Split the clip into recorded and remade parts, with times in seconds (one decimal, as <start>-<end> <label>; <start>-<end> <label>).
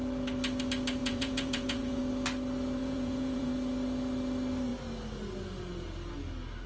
0.0-1.0 recorded; 1.0-2.0 remade; 2.0-2.8 recorded; 2.8-3.5 remade; 3.5-6.7 recorded